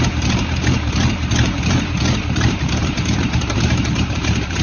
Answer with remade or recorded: remade